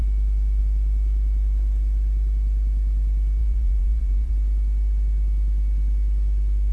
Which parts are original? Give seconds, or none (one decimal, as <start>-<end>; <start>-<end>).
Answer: 0.0-3.4; 4.3-6.7